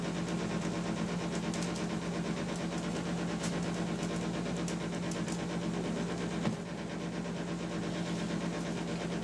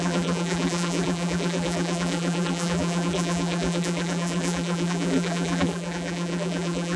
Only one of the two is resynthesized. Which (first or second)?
second